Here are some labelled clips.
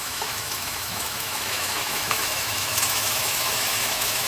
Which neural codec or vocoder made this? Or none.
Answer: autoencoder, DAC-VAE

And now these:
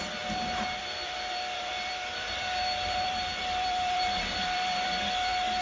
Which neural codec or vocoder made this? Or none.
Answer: vocoder, BigVGAN v2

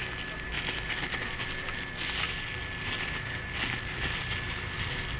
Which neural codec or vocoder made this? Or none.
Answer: none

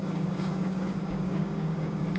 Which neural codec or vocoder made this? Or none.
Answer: codec, DAC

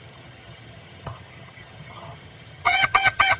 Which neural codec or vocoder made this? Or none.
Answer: vocoder, HiFi-GAN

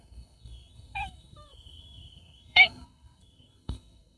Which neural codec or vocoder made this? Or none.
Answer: codec, SNAC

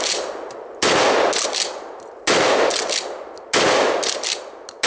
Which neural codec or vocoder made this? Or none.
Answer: none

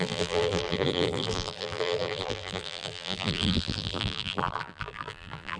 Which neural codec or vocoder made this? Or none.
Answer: vocoder, BigVGAN v2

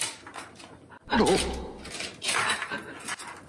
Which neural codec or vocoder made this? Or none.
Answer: none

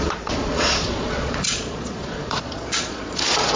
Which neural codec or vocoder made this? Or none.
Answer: vocoder, Vocos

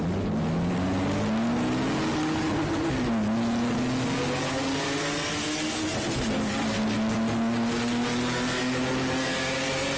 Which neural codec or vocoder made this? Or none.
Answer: none